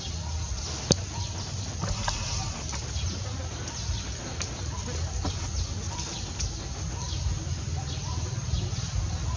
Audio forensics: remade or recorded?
recorded